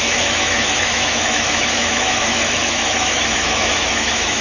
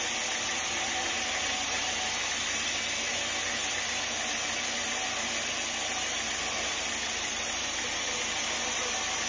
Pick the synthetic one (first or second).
first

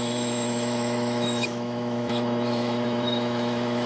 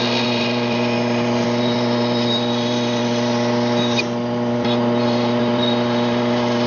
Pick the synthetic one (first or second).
first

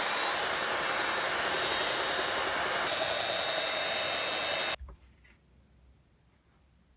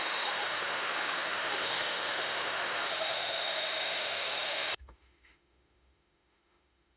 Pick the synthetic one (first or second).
second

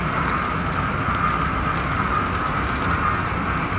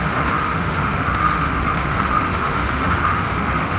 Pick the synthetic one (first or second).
second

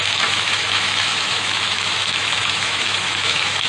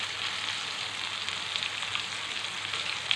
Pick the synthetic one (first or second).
first